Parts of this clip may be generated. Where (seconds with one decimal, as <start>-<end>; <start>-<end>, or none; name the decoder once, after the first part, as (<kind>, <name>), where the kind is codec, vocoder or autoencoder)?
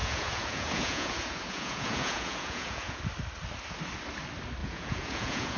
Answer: 0.0-3.0 (vocoder, Vocos); 4.6-5.6